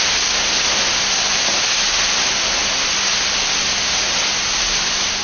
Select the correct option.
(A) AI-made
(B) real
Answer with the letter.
B